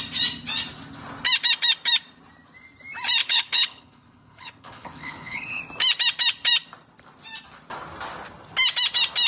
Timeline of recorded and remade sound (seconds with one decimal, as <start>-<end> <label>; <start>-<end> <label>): 0.0-3.2 recorded; 3.2-5.6 remade; 5.6-9.3 recorded